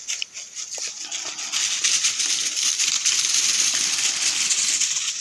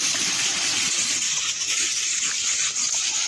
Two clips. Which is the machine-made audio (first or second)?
second